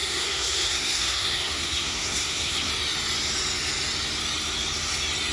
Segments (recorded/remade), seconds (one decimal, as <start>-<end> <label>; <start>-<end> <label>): 0.0-2.7 remade; 2.7-5.3 recorded